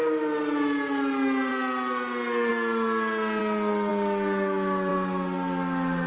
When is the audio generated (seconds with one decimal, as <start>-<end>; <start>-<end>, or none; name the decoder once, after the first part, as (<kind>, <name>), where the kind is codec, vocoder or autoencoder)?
none

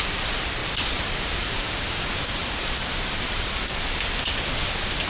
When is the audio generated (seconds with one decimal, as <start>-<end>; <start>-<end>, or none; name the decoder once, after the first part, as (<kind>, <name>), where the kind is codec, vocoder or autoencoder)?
0.6-1.1 (vocoder, BigVGAN v2); 2.4-3.6

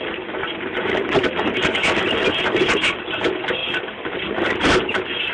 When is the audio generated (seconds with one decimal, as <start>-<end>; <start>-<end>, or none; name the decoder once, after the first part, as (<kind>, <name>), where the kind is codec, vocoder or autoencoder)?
0.4-2.4 (vocoder, BigVGAN v2); 3.6-4.2

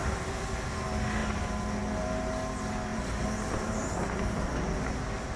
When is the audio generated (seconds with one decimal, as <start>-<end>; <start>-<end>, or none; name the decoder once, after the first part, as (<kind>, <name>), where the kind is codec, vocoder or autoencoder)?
0.0-0.6 (vocoder, BigVGAN v2); 2.9-4.5

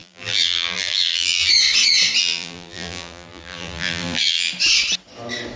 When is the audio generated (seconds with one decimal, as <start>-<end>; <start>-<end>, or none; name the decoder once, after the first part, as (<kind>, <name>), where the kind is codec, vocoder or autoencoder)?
0.0-1.5 (vocoder, BigVGAN v2); 2.2-4.5